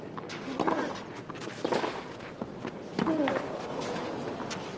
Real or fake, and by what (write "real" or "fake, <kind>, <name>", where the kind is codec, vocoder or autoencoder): real